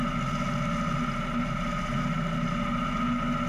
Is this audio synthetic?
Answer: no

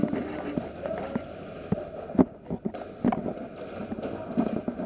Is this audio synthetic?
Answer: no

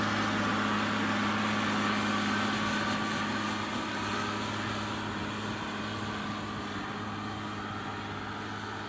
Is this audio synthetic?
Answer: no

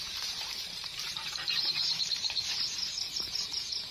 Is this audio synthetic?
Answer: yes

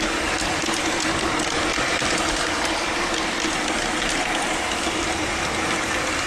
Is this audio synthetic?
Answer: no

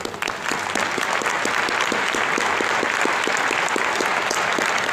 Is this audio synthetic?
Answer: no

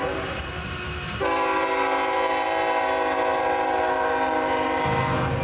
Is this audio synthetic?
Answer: no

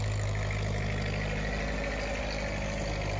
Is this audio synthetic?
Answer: no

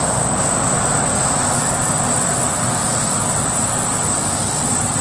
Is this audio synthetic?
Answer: no